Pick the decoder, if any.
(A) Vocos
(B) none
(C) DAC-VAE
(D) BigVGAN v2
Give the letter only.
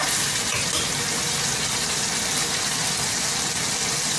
B